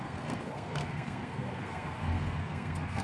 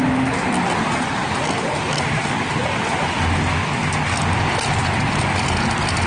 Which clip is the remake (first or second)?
first